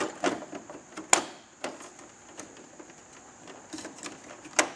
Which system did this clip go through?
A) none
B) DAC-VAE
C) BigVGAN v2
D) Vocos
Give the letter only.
A